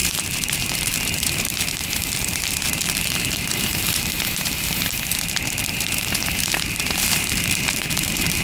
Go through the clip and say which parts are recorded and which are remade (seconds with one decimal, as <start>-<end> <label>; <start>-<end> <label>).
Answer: 0.0-8.4 remade